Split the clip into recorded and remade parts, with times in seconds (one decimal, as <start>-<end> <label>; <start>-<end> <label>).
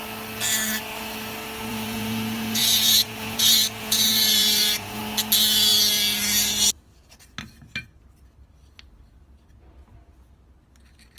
0.0-1.7 recorded; 1.7-5.0 remade; 5.0-11.2 recorded